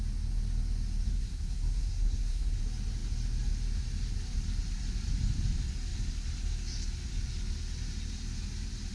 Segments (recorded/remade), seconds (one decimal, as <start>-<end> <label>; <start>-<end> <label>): 0.0-1.1 recorded; 1.1-2.6 remade; 2.6-8.9 recorded